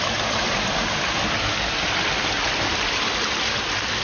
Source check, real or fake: fake